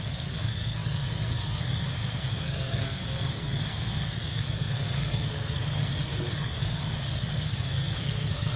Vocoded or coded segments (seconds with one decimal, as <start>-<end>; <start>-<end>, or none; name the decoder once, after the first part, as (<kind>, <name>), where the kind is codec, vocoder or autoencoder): 0.0-8.6 (codec, SNAC)